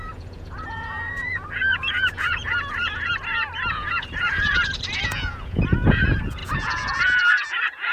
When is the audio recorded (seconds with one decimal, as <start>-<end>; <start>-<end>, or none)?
3.1-3.7